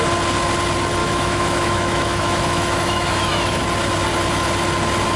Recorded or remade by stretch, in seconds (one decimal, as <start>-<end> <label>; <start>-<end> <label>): 0.0-1.0 recorded; 1.0-3.6 remade; 3.6-5.2 recorded